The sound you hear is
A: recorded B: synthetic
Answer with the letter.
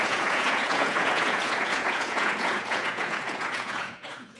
B